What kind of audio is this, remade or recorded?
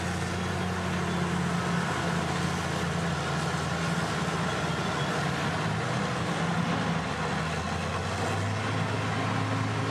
recorded